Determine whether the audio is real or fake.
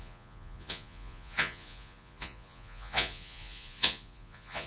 fake